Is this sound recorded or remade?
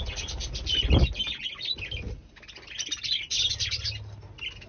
recorded